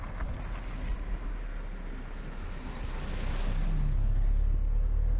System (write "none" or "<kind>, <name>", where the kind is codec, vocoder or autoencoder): none